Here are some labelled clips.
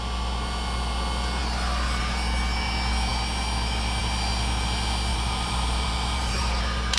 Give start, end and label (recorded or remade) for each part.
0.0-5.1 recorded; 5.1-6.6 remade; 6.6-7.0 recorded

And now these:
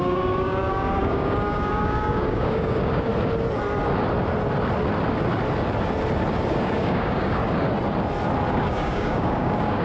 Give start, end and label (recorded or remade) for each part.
0.0-3.1 remade; 3.1-6.6 recorded; 6.6-7.4 remade; 7.4-8.5 recorded; 8.5-9.8 remade

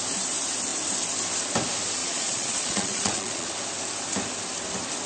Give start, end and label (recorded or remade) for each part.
0.0-2.0 recorded; 2.0-3.5 remade; 3.5-5.1 recorded